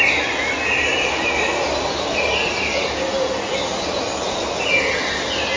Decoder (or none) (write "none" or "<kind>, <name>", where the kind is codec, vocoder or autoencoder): none